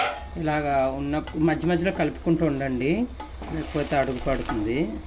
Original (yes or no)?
yes